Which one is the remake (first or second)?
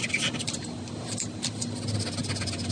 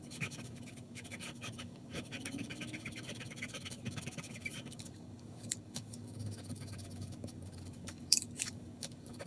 second